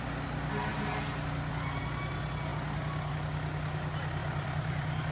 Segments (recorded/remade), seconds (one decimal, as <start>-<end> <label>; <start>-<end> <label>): 0.0-4.2 recorded; 4.2-5.1 remade